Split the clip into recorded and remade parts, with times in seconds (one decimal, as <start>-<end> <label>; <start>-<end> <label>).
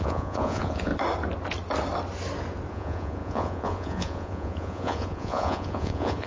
0.0-0.9 remade; 0.9-2.7 recorded; 2.7-6.3 remade